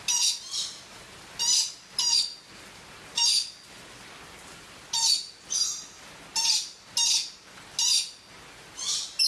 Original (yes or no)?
yes